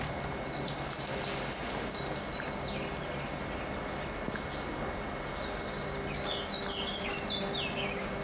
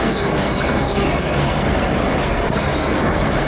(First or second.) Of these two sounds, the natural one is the first